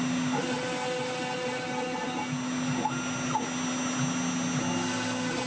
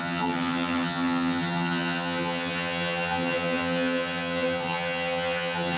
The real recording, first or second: first